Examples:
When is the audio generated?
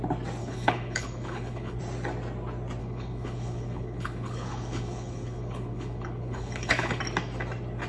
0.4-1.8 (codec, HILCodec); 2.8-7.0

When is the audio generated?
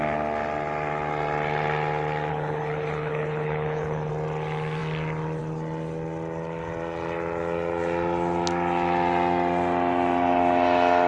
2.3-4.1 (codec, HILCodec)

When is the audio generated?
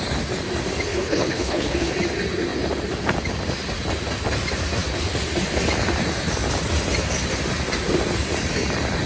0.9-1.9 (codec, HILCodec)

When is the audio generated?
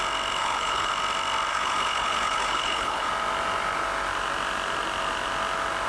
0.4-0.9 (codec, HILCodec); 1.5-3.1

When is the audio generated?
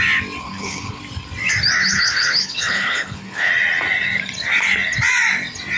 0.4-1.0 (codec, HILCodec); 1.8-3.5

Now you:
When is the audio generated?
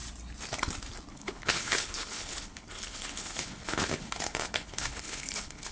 1.1-5.7 (codec, HILCodec)